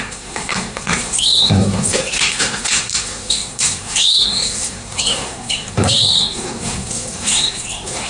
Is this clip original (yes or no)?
no